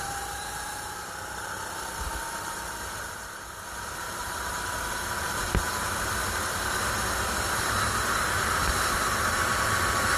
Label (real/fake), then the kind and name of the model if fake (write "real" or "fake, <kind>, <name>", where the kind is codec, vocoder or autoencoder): real